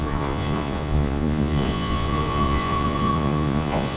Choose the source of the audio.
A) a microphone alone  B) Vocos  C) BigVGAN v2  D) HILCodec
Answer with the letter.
B